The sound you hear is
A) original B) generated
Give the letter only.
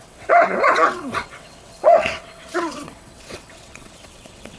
B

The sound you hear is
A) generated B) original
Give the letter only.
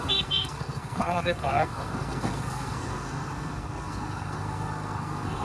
A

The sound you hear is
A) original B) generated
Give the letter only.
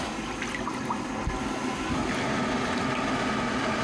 A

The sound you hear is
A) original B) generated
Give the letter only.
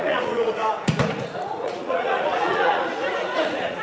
B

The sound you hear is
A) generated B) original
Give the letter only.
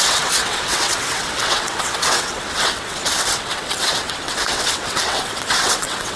A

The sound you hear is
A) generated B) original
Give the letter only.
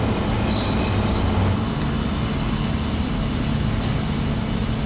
B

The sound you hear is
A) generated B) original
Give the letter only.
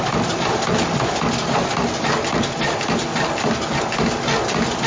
B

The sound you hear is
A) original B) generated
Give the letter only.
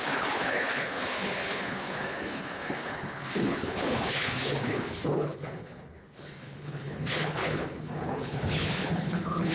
B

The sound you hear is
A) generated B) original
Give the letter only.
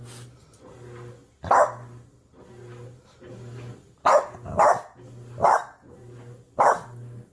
B